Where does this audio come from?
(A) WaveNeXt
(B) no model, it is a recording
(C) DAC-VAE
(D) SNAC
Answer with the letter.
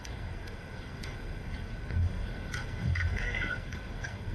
D